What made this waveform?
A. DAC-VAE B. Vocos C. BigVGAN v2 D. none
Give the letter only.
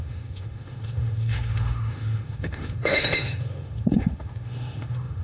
A